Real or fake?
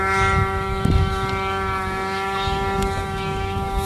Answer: fake